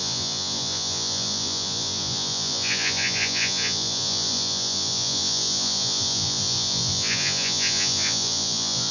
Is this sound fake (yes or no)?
yes